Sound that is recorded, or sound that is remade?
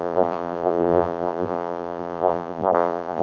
remade